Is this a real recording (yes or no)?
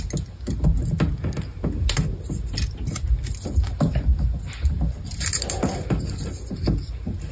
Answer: yes